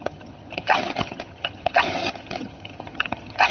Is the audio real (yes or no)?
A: no